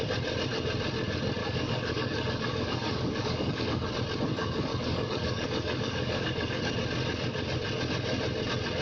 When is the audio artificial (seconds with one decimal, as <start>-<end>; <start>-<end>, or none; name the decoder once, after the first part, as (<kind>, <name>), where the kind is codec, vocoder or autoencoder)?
1.4-3.9 (codec, DAC); 4.3-6.6